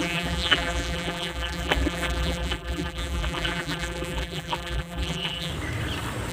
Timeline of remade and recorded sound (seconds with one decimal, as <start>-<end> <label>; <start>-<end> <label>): 0.0-5.5 remade; 5.5-6.3 recorded